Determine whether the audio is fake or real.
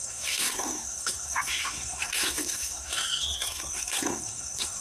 fake